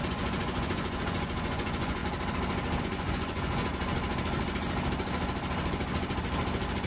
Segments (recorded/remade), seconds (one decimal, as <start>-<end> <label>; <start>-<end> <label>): 0.0-2.0 remade; 2.0-2.8 recorded; 2.8-3.7 remade; 3.7-6.9 recorded